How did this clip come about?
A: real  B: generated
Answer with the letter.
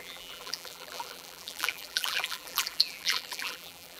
B